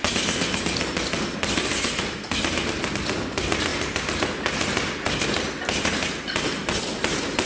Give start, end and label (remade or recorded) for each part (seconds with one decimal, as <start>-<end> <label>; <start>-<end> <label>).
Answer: 0.0-7.5 recorded